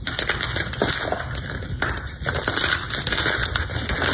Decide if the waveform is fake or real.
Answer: real